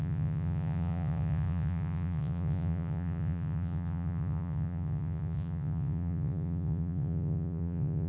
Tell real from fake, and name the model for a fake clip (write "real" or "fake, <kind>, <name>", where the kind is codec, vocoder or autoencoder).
fake, vocoder, Vocos